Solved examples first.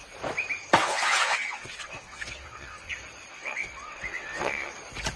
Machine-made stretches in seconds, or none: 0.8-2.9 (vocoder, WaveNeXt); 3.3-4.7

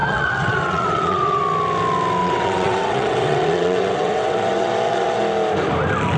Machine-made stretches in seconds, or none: 0.0-1.4 (vocoder, WaveNeXt); 2.2-5.2